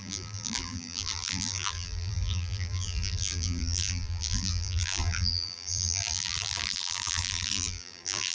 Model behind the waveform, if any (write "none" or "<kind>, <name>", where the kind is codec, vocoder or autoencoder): vocoder, BigVGAN v2